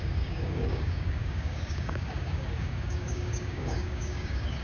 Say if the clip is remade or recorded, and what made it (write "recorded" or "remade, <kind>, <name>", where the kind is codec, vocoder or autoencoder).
remade, codec, DAC